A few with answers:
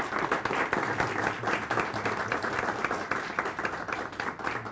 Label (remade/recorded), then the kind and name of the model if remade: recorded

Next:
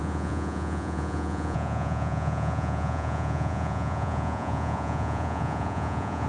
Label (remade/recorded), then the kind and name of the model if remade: remade, vocoder, Vocos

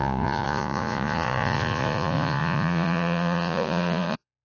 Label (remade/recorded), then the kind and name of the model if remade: remade, vocoder, Vocos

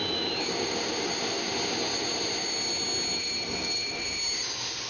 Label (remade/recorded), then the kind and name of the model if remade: recorded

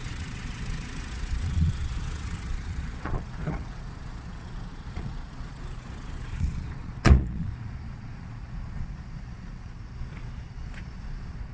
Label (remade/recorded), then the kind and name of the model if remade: remade, vocoder, Vocos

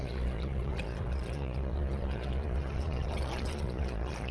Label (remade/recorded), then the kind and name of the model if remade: remade, vocoder, Vocos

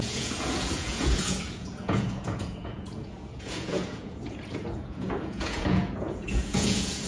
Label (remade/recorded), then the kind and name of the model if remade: remade, vocoder, Vocos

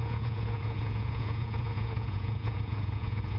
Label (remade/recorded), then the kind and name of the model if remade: remade, vocoder, Vocos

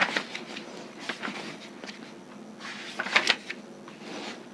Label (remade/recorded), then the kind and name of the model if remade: recorded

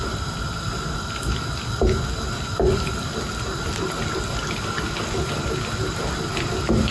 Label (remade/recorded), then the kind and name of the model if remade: recorded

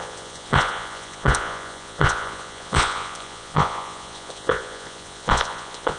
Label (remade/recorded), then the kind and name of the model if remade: remade, vocoder, Vocos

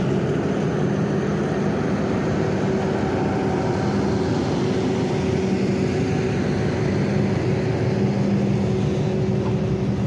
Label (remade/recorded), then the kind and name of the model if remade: recorded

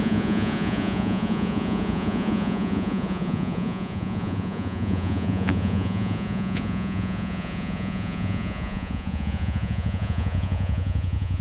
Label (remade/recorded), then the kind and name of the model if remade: remade, vocoder, Vocos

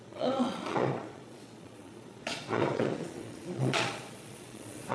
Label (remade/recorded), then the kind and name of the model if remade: remade, vocoder, Vocos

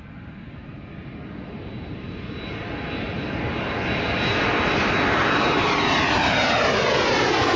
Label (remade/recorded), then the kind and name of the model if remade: recorded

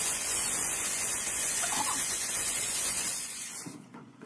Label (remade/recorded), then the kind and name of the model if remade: remade, vocoder, Vocos